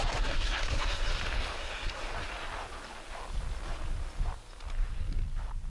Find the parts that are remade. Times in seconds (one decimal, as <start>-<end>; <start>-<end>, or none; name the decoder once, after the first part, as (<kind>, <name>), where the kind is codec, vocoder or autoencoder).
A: 0.0-1.1 (codec, SNAC); 1.6-2.0